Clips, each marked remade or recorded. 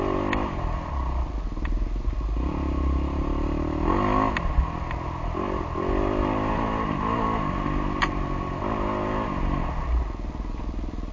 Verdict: recorded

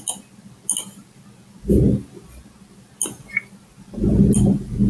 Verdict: recorded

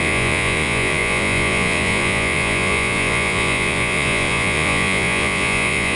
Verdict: remade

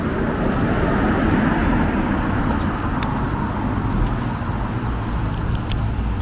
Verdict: recorded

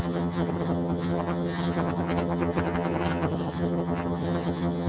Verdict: remade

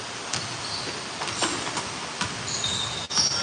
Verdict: recorded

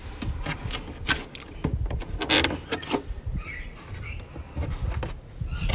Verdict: recorded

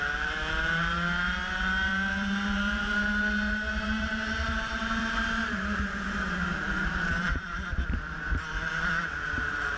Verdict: remade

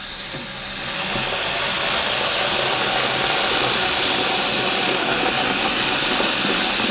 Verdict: recorded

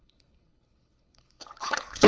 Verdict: remade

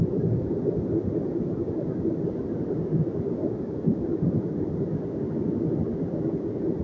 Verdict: recorded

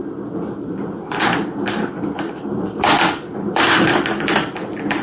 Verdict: remade